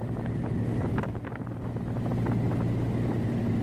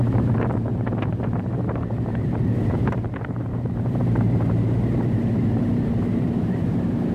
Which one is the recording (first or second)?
first